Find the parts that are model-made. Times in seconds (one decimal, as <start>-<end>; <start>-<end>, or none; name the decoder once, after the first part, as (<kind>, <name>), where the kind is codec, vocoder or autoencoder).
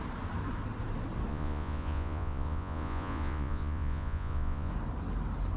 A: 1.3-4.7 (vocoder, Vocos)